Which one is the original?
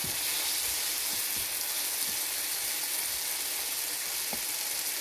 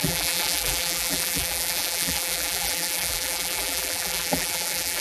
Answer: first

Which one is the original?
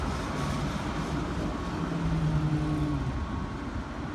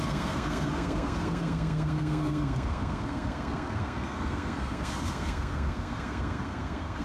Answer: first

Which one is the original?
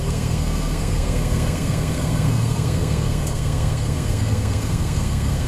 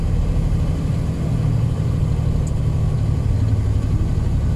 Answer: second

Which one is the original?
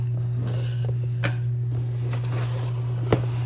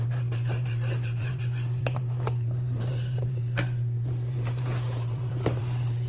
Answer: first